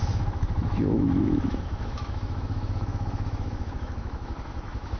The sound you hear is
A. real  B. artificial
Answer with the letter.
B